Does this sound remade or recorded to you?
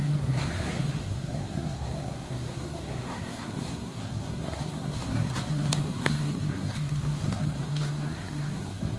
remade